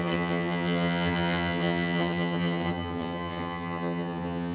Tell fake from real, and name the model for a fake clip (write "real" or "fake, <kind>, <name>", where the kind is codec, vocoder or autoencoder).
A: fake, vocoder, HiFi-GAN